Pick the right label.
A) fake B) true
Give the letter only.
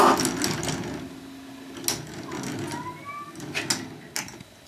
B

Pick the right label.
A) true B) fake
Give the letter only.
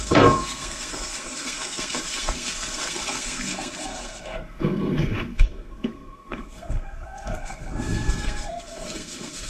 B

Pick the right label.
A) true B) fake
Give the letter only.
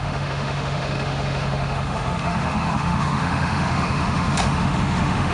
B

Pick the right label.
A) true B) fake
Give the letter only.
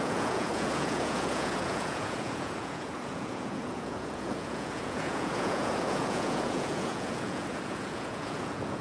B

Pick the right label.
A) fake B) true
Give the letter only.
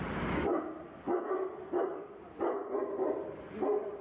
B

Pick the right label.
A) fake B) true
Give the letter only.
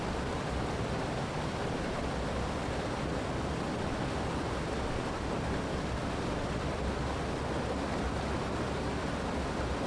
B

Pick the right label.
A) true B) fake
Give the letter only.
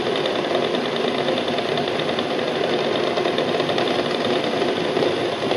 A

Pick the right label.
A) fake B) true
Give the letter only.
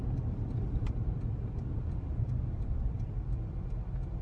A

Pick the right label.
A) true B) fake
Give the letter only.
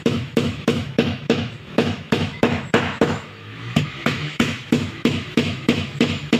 B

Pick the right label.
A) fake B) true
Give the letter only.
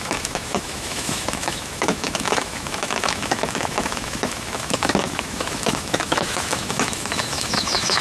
A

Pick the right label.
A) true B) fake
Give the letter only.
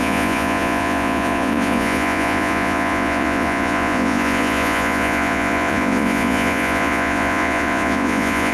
B